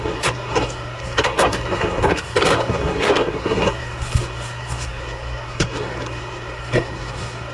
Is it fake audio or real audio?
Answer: fake